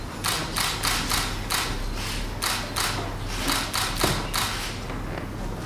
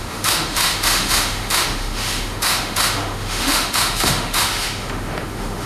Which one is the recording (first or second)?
first